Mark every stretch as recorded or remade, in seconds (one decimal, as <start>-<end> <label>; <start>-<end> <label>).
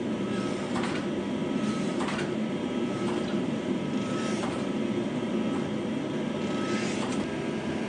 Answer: 0.0-1.4 recorded; 1.4-4.7 remade; 4.7-7.9 recorded